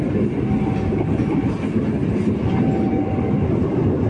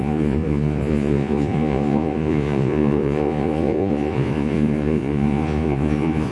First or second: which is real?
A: first